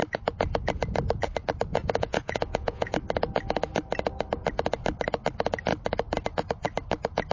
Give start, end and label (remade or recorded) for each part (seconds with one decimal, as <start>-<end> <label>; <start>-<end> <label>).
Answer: 0.0-1.7 recorded; 1.7-2.9 remade; 2.9-7.3 recorded